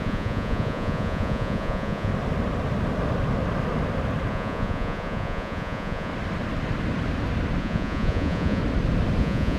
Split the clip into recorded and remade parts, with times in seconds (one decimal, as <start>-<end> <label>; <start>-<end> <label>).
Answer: 0.0-2.1 remade; 2.1-4.3 recorded; 4.3-6.1 remade; 6.1-7.6 recorded; 7.6-8.6 remade; 8.6-9.2 recorded; 9.2-9.6 remade